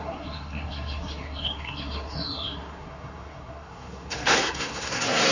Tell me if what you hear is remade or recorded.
remade